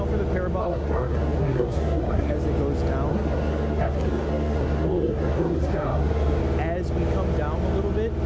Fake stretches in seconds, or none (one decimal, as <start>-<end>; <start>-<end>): 0.6-2.3; 3.1-6.4